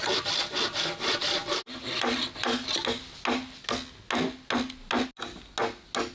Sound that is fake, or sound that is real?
real